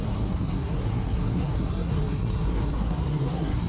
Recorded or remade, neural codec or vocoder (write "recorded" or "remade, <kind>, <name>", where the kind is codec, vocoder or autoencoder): remade, codec, SNAC